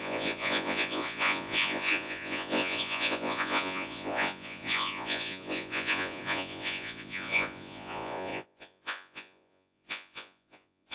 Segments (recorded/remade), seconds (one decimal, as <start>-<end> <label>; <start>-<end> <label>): 0.0-10.9 remade